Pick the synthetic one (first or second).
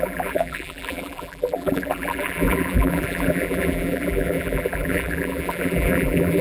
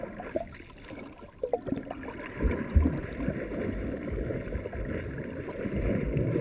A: first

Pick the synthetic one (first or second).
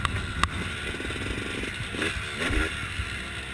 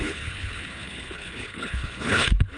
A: second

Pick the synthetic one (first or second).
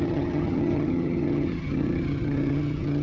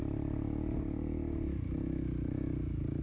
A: first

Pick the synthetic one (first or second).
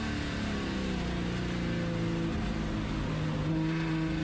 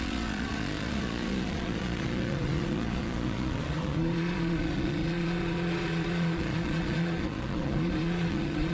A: second